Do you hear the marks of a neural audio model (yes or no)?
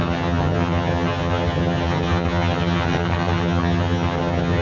yes